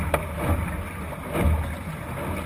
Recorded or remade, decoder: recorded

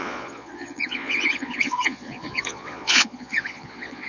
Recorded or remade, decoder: remade, vocoder, Vocos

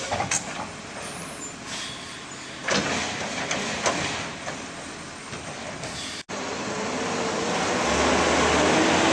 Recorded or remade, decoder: recorded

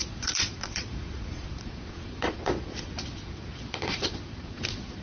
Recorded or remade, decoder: remade, vocoder, Vocos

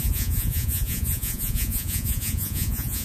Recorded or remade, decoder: remade, vocoder, Vocos